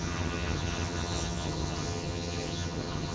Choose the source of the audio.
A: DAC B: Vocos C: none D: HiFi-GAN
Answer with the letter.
D